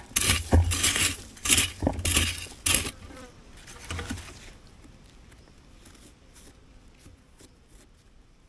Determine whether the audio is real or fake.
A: real